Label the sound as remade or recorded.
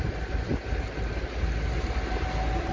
recorded